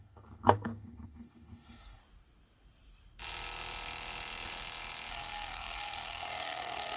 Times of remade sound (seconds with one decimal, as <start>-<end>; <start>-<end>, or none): 0.0-2.0; 5.1-7.0